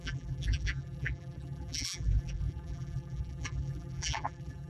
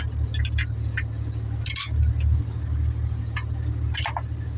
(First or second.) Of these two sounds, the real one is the second